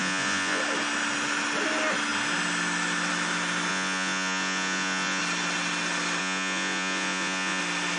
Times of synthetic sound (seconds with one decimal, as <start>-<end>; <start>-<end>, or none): 0.0-0.6; 3.7-5.2; 6.2-7.6